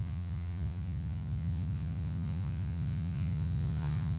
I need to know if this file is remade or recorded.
remade